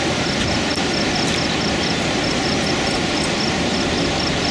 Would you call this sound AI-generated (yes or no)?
no